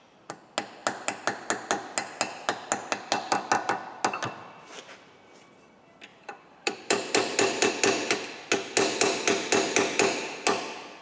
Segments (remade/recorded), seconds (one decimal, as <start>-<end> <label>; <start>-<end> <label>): 0.0-6.1 recorded; 6.1-7.7 remade; 7.7-11.0 recorded